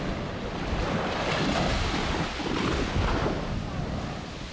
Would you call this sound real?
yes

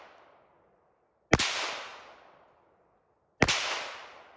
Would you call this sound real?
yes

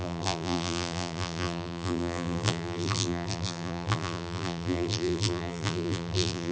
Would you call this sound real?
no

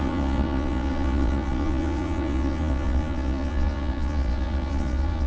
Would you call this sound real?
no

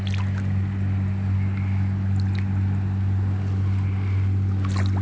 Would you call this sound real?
yes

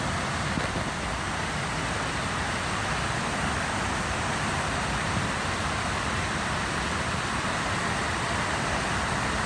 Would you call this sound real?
yes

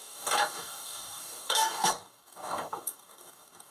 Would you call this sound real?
no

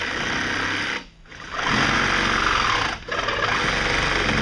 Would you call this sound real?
yes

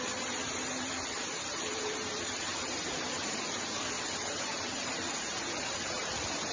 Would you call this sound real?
no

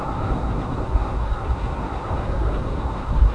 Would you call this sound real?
no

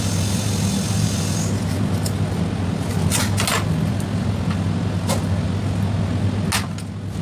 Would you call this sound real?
yes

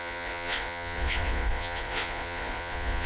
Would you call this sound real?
no